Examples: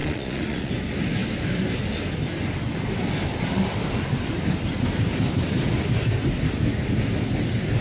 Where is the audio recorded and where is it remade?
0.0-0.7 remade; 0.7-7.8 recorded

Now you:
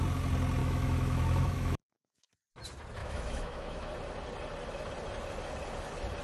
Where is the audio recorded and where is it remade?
0.0-0.6 recorded; 0.6-2.3 remade; 2.3-3.0 recorded; 3.0-3.9 remade; 3.9-6.2 recorded

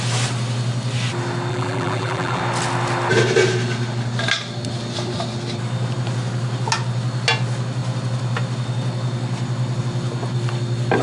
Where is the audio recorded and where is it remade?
0.0-1.5 recorded; 1.5-2.4 remade; 2.4-11.0 recorded

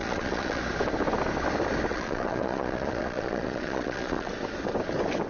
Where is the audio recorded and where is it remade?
0.0-0.6 remade; 0.6-1.9 recorded; 1.9-4.3 remade; 4.3-5.3 recorded

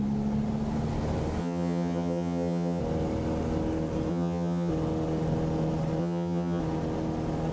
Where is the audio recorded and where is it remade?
0.0-1.4 recorded; 1.4-2.8 remade; 2.8-4.1 recorded; 4.1-4.7 remade; 4.7-6.0 recorded; 6.0-6.6 remade; 6.6-7.5 recorded